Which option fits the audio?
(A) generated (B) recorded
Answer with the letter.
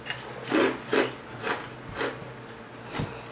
B